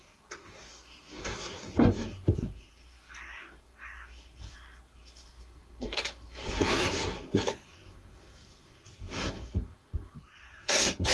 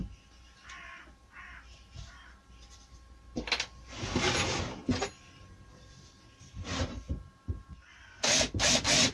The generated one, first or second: first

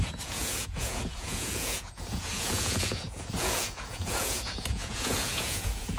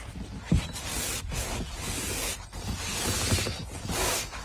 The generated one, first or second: first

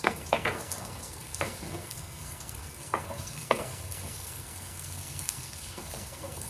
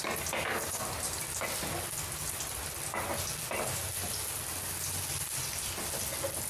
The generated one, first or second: first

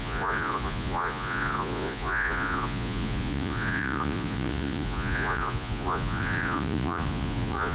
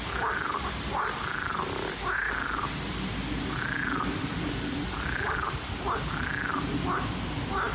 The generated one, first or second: first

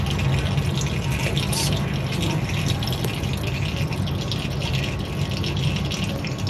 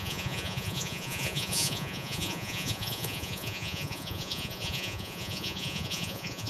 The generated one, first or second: second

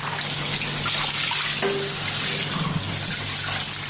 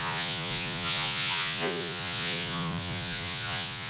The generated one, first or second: second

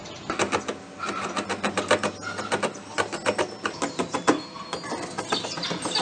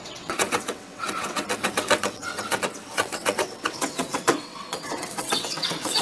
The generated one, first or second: second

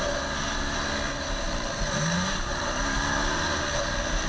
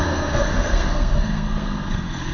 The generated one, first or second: second